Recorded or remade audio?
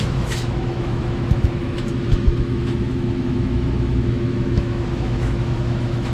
remade